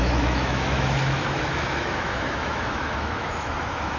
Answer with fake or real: fake